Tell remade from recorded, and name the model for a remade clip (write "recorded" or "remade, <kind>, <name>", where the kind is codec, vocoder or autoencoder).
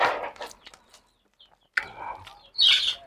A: recorded